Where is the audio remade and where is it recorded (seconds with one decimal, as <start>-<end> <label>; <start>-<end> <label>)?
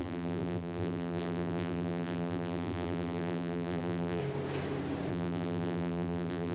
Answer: 0.0-4.2 remade; 4.2-5.1 recorded; 5.1-6.5 remade